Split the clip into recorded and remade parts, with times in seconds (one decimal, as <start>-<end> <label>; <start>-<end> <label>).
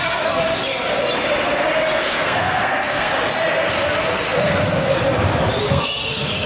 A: 0.0-0.4 remade; 0.4-2.0 recorded; 2.0-3.1 remade; 3.1-4.4 recorded; 4.4-5.0 remade; 5.0-5.6 recorded; 5.6-6.5 remade